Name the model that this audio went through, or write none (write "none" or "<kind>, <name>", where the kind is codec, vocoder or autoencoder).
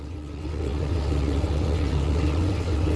vocoder, WaveNeXt